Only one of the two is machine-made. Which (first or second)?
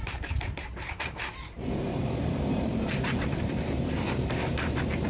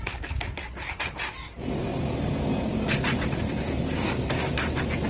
first